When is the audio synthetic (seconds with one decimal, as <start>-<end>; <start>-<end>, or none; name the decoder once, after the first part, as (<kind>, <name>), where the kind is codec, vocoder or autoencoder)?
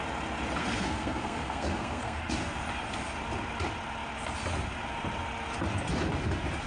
0.6-2.2 (codec, SNAC)